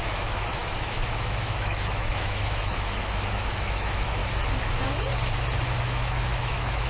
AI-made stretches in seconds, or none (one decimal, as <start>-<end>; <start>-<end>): 0.0-4.2; 5.8-6.9